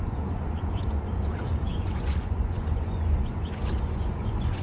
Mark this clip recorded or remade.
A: remade